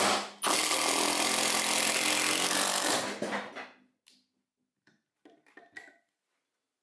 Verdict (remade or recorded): recorded